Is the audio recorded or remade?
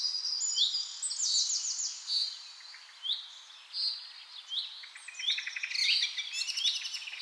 recorded